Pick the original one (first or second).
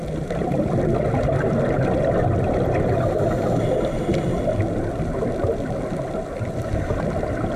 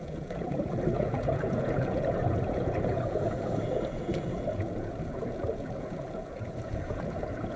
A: first